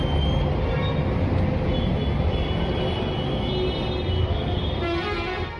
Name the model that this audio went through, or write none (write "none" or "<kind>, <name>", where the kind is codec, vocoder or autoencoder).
none